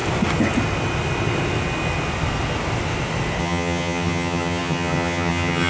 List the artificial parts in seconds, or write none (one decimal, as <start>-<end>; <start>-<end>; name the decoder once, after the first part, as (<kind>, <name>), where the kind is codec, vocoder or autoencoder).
3.4-5.7 (vocoder, HiFi-GAN)

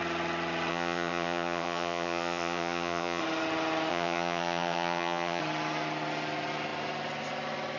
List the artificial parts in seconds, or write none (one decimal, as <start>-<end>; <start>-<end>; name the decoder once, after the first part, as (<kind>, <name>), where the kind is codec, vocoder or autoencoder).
0.7-3.2 (vocoder, HiFi-GAN); 3.9-5.4